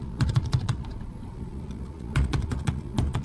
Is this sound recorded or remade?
remade